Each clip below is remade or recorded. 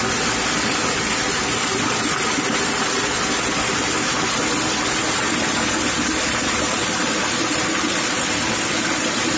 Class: recorded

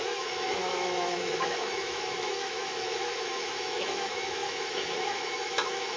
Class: remade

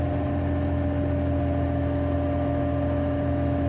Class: recorded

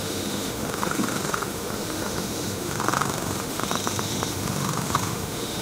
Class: remade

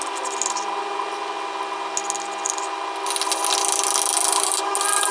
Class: recorded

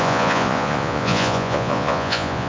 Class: remade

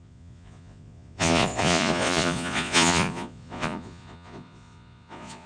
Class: remade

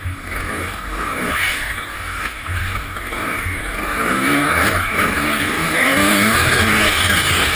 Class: remade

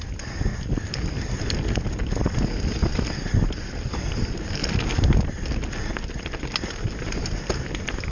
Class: recorded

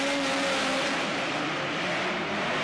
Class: recorded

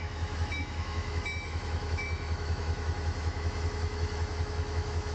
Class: remade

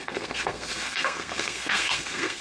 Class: remade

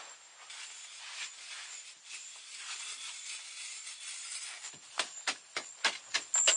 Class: recorded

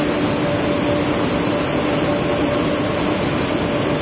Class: recorded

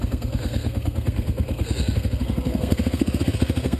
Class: remade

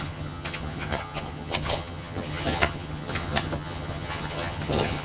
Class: remade